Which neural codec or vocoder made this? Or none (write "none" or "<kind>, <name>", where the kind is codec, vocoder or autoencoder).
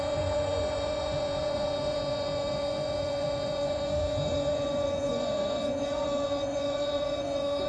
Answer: vocoder, Vocos